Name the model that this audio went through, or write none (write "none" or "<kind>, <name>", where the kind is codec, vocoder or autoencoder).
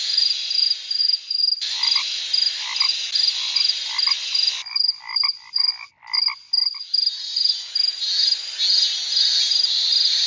none